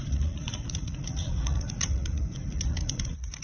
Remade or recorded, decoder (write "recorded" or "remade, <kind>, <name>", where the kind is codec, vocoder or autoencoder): remade, vocoder, Vocos